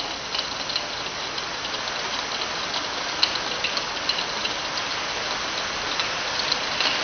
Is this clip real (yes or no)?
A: yes